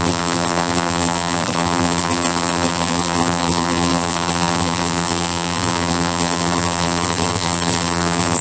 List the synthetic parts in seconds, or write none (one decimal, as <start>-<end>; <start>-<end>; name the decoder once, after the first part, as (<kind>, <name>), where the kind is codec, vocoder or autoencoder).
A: 0.0-8.4 (vocoder, BigVGAN v2)